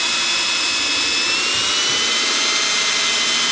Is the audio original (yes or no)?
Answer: yes